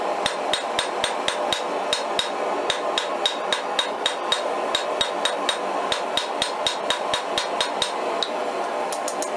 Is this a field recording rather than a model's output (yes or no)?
yes